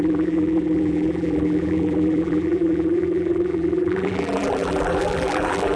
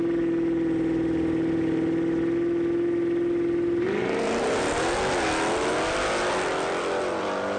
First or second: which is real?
second